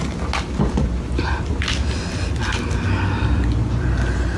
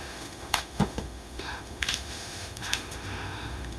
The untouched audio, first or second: first